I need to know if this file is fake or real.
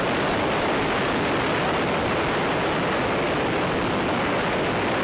real